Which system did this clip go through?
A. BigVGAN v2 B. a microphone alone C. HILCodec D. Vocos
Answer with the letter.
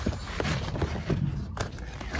B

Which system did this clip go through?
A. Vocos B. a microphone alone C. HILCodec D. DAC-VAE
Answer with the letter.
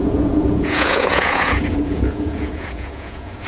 A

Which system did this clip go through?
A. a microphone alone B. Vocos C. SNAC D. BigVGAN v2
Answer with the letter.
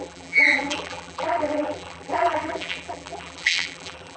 D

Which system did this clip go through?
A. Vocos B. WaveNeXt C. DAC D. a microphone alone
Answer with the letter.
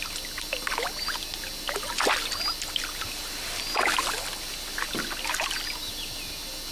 D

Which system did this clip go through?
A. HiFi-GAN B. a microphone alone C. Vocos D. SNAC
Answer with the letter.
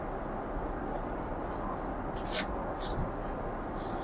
B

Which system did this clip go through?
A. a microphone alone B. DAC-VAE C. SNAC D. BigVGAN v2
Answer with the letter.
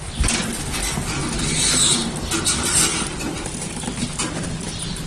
A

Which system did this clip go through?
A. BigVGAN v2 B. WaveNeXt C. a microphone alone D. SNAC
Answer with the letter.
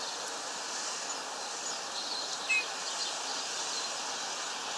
C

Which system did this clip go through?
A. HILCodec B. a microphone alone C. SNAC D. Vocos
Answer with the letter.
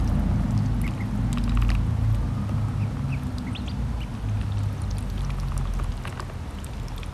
B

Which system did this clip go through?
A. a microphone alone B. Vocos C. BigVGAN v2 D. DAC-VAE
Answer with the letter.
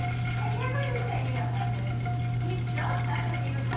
A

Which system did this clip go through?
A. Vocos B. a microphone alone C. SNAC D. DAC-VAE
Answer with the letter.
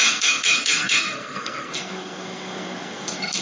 C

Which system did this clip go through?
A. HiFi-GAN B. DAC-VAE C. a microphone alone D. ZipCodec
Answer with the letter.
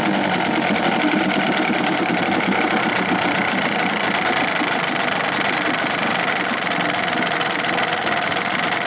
C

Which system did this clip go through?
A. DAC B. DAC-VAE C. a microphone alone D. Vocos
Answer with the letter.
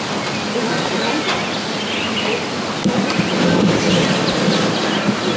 C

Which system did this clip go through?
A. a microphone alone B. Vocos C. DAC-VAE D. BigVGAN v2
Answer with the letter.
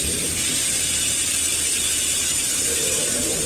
A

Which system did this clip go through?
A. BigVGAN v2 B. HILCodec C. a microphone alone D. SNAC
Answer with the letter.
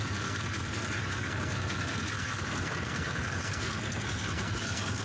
D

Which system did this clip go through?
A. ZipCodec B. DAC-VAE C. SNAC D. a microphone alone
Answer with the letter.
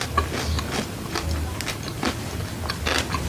D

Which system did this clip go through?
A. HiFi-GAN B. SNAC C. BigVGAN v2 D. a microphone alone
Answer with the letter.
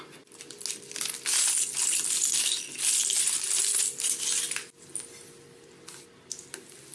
D